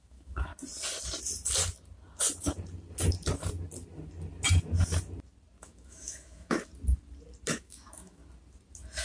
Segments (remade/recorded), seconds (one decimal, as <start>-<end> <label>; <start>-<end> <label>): 0.0-0.5 remade; 0.5-5.6 recorded; 5.6-6.7 remade; 6.7-7.5 recorded; 7.5-8.2 remade; 8.2-9.0 recorded